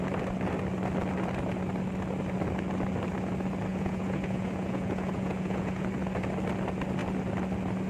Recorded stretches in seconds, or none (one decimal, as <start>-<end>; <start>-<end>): 0.0-3.7; 5.9-7.9